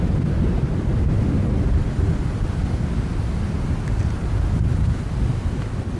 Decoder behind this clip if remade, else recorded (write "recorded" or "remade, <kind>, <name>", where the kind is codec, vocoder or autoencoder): remade, vocoder, BigVGAN v2